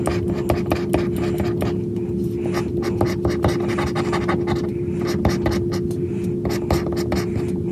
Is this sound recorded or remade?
recorded